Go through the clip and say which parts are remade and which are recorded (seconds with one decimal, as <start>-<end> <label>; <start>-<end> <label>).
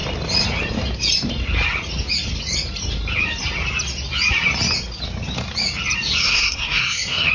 0.0-6.2 recorded; 6.2-7.3 remade